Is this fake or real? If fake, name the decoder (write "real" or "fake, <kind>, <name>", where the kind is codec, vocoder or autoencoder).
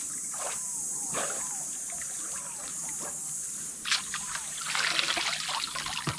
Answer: real